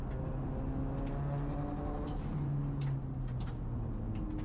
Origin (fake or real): real